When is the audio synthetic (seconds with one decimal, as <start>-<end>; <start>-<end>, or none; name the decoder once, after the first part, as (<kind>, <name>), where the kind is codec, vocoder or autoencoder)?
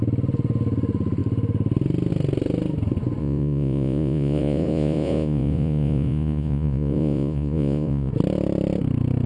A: 3.2-8.1 (vocoder, Vocos)